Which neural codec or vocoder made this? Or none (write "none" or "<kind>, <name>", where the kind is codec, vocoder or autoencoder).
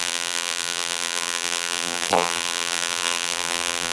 vocoder, BigVGAN v2